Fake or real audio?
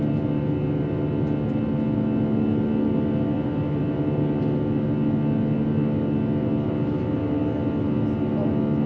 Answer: real